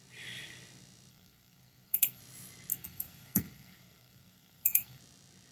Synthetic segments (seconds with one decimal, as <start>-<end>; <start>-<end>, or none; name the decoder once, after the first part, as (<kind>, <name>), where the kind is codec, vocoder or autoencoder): 1.1-2.2 (codec, SNAC); 2.7-5.0